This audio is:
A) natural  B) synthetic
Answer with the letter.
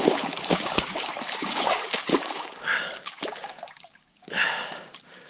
B